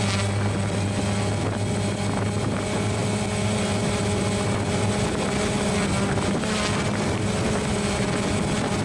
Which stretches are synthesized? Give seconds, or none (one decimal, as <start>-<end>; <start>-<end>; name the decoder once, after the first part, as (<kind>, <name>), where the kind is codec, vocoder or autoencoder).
none

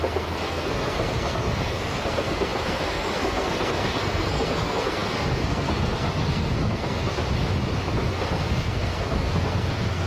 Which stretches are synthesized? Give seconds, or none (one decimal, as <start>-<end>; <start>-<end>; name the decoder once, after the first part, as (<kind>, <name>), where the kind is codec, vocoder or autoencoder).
0.0-7.2 (codec, SNAC); 7.9-10.1

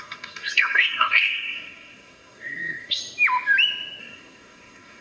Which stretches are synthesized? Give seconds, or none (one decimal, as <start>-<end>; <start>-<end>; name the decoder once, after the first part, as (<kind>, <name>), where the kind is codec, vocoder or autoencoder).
0.0-3.0 (codec, SNAC); 4.0-5.0

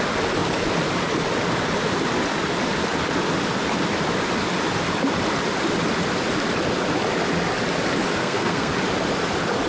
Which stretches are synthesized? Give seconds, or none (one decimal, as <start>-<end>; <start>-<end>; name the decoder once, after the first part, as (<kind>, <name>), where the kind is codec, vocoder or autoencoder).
8.2-8.7 (codec, SNAC)

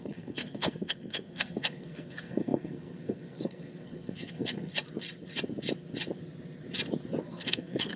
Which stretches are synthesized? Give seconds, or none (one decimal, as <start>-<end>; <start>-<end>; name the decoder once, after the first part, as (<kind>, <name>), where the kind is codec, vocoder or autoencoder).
0.0-4.7 (codec, SNAC); 7.2-8.0